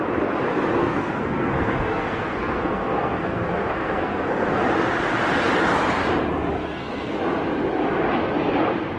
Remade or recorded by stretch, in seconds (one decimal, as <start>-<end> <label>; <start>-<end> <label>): 0.0-0.8 recorded; 0.8-4.6 remade; 4.6-6.6 recorded; 6.6-7.2 remade; 7.2-9.0 recorded